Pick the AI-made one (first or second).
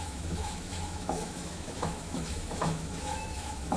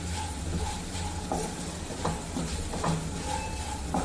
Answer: first